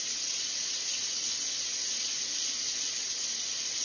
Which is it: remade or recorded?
recorded